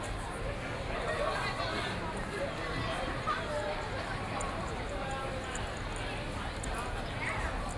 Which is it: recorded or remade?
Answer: recorded